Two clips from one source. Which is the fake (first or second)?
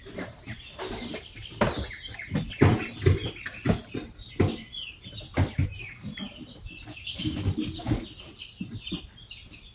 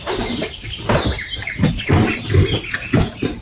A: second